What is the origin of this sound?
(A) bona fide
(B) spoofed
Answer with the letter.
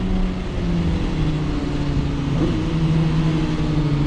A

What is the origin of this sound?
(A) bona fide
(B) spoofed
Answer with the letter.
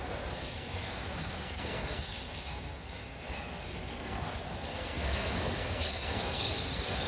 B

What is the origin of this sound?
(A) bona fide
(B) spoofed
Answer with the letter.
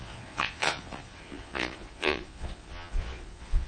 B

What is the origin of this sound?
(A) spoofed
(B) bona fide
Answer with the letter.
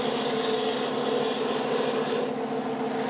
B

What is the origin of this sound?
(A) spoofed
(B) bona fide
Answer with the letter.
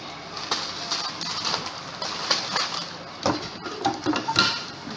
B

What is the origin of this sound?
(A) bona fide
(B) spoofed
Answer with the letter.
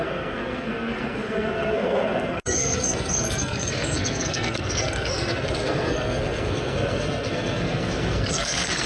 B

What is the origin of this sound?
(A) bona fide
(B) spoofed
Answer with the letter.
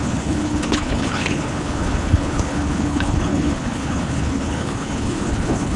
B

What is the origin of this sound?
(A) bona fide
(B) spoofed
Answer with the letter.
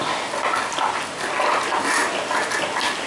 A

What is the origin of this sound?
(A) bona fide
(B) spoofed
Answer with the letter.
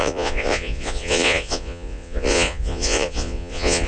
B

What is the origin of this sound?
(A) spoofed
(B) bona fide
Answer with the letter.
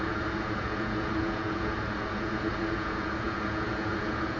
A